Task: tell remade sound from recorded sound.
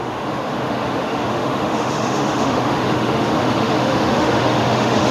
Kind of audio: remade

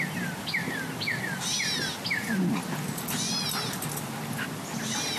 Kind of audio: recorded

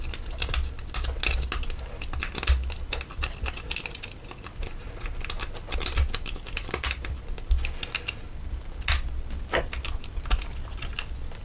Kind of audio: recorded